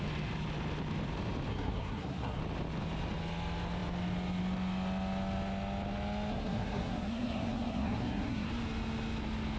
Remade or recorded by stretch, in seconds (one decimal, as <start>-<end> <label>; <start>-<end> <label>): 0.0-1.5 recorded; 1.5-2.4 remade; 2.4-6.3 recorded; 6.3-8.5 remade; 8.5-9.6 recorded